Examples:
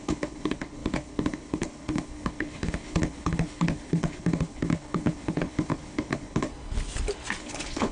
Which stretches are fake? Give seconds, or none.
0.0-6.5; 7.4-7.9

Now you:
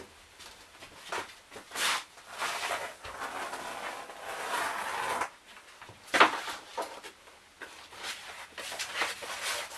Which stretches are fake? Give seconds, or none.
none

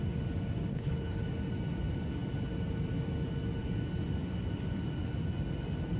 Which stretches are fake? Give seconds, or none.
0.7-1.2

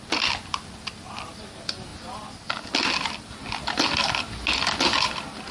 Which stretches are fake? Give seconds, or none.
none

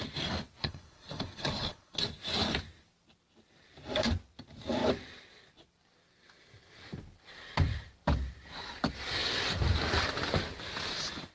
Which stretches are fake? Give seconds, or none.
0.6-2.0

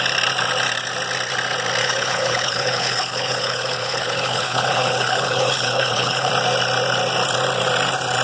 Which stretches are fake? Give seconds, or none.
1.8-6.3